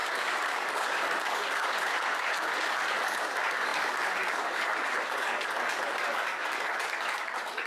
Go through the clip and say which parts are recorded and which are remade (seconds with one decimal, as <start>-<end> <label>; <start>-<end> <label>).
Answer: 0.0-7.7 remade